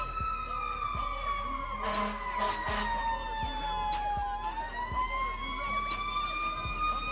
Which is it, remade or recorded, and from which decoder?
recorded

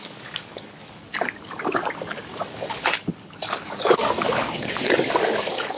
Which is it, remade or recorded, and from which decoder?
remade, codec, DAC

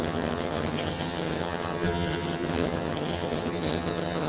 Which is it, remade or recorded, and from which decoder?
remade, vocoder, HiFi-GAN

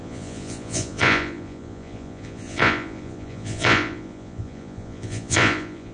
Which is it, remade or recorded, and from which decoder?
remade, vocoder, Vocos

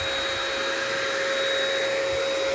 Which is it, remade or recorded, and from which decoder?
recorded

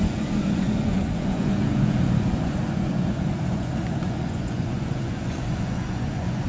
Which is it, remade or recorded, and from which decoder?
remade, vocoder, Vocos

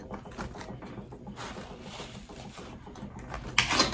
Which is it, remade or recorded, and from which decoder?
recorded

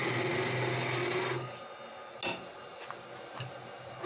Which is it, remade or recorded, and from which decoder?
recorded